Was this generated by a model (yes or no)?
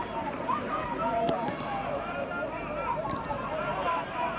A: yes